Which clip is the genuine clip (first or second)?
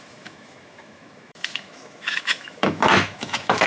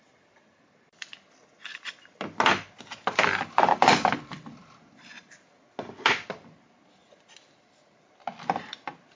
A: second